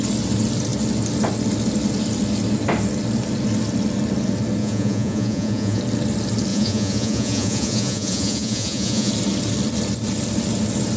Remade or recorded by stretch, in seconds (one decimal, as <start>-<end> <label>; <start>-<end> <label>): 0.0-4.6 recorded; 4.6-5.8 remade; 5.8-6.5 recorded; 6.5-9.1 remade; 9.1-11.0 recorded